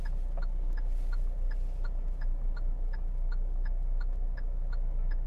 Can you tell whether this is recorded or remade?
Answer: recorded